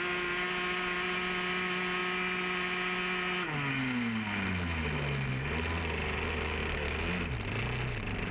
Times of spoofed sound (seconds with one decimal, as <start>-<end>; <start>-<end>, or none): none